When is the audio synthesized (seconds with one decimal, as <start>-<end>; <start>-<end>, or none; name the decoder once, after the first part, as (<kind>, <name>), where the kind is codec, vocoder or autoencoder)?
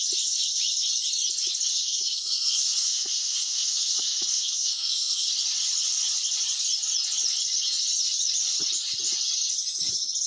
1.7-5.3 (codec, SNAC)